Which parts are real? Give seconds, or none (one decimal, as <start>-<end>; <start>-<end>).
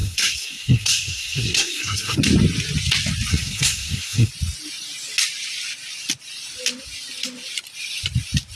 2.2-3.3; 4.3-8.6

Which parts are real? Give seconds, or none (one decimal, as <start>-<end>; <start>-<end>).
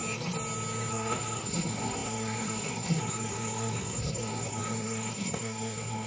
0.0-0.9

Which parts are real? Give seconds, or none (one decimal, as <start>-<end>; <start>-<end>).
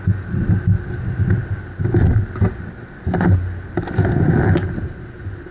0.0-5.5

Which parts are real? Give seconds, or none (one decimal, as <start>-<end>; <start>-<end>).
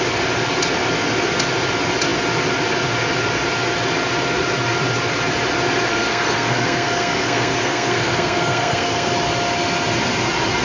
0.0-5.9; 9.1-10.6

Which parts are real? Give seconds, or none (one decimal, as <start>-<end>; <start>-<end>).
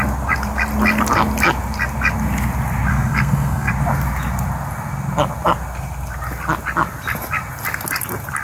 0.0-2.9; 3.7-8.4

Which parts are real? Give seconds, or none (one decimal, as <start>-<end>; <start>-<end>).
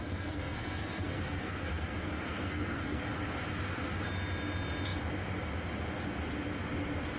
3.4-7.2